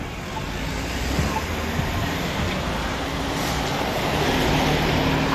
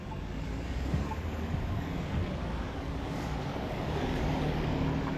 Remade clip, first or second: second